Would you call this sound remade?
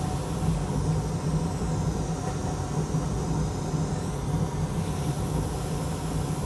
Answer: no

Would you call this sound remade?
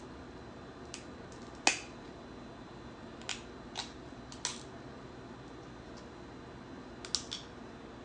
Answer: no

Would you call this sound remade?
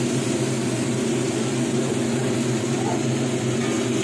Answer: no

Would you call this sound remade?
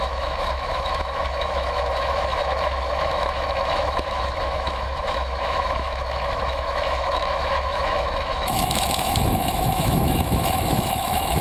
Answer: yes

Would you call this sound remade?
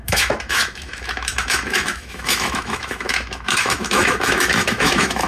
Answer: yes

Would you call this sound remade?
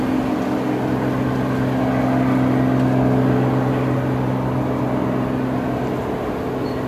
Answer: no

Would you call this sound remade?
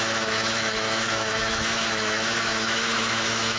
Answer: yes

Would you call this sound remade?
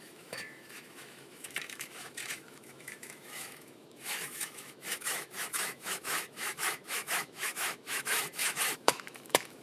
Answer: yes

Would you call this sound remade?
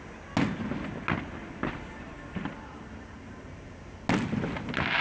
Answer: no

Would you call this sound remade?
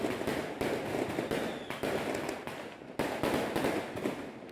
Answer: no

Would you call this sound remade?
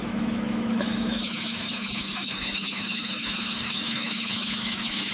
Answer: yes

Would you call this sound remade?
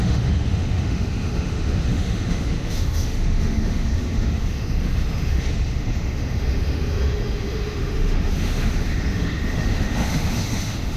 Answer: yes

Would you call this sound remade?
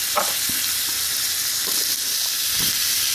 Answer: no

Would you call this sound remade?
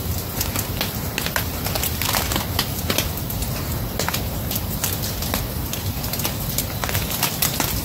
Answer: no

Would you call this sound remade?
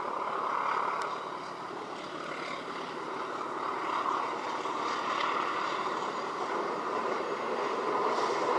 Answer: no